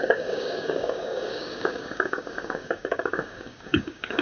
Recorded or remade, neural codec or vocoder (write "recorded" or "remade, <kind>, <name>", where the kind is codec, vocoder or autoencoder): remade, codec, DAC